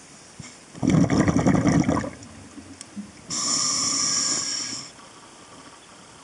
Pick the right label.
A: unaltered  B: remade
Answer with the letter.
A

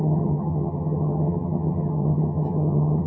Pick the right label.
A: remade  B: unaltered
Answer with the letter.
A